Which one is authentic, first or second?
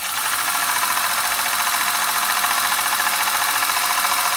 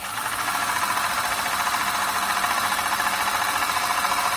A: second